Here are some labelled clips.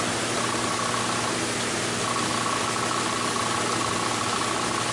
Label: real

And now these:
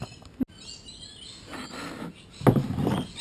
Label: real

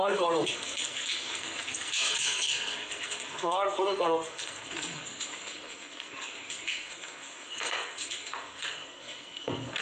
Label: fake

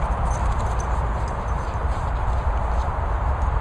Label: real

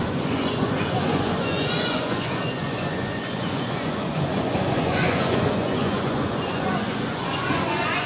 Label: fake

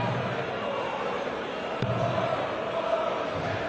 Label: real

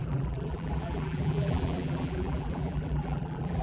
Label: fake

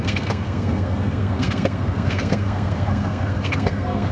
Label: fake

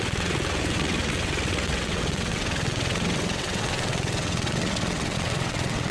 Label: fake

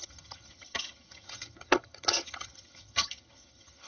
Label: fake